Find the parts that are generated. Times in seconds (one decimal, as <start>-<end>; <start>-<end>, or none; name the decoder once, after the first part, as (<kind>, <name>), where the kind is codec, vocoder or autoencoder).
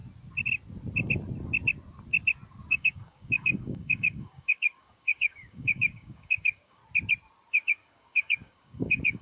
2.7-6.8 (codec, DAC); 7.5-9.2